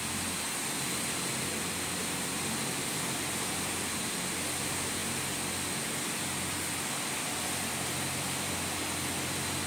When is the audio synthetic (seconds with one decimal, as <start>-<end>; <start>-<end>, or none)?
none